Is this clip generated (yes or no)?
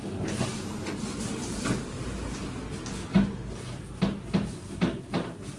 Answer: no